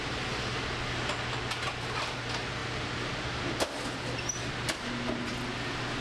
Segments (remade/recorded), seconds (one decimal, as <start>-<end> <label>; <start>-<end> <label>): 0.0-6.0 recorded